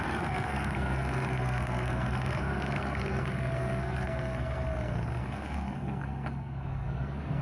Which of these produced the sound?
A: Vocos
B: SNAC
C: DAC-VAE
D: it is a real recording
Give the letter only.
B